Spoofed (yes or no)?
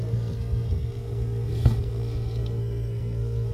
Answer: yes